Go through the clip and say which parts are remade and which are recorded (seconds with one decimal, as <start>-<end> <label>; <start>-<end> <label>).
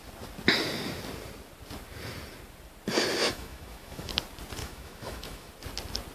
0.0-3.2 recorded; 3.2-4.1 remade; 4.1-4.6 recorded; 4.6-5.5 remade; 5.5-6.1 recorded